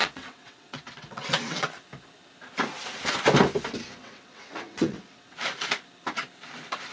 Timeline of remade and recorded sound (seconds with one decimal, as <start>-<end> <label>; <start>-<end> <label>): 0.0-1.7 remade; 1.7-4.0 recorded; 4.0-5.4 remade; 5.4-6.9 recorded